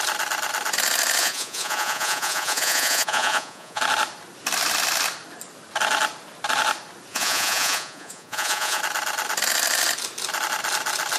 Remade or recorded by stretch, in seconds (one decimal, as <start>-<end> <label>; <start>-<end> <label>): 0.0-1.2 recorded; 1.2-3.8 remade; 3.8-7.1 recorded; 7.1-8.8 remade; 8.8-11.2 recorded